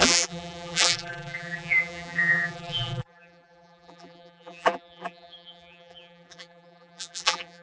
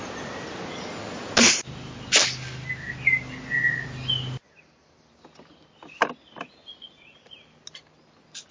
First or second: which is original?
second